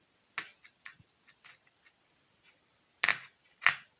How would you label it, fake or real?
real